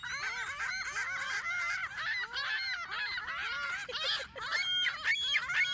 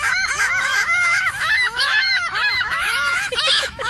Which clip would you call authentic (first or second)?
first